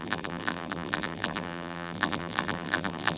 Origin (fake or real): fake